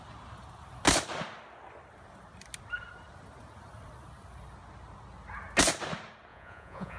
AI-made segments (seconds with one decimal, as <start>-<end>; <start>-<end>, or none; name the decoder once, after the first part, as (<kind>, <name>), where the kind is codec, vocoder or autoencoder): 6.3-7.0 (vocoder, Vocos)